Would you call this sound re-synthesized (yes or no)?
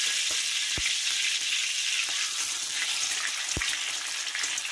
no